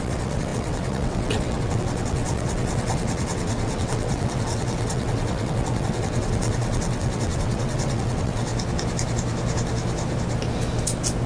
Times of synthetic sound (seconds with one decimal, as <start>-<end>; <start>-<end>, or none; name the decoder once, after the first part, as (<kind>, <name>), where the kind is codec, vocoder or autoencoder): 0.0-8.5 (vocoder, WaveNeXt)